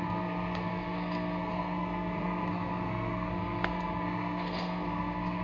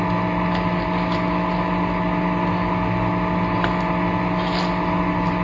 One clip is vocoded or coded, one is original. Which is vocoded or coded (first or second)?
first